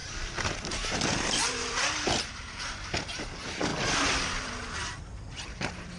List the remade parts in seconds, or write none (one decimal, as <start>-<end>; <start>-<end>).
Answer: 2.7-6.0